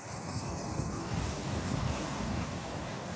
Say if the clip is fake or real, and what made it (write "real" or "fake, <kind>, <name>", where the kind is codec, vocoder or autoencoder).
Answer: fake, codec, DAC